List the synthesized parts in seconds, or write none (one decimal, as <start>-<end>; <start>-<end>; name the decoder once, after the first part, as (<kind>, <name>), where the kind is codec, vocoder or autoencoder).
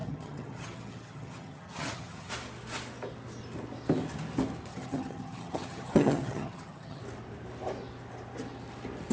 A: 0.0-2.3 (vocoder, HiFi-GAN); 4.7-7.0